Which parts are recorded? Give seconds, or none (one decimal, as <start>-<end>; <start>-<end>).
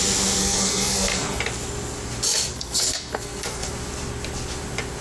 0.0-0.4; 1.4-2.5; 3.7-5.0